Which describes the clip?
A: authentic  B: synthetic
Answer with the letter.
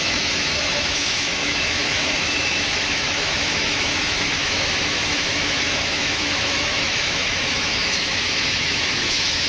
B